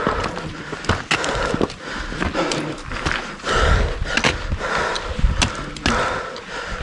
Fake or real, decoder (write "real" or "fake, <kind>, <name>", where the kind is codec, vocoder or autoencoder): real